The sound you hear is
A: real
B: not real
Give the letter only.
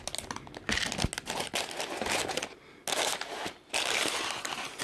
A